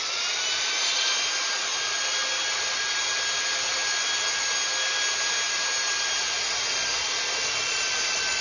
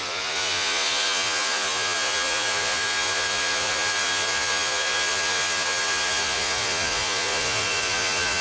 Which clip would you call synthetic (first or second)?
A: second